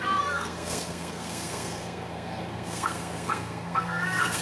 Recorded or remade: remade